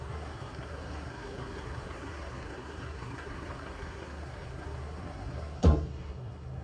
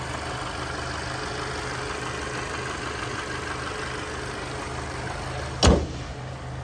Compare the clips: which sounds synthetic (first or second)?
first